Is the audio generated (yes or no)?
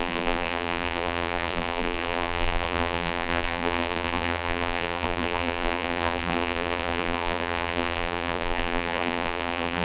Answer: yes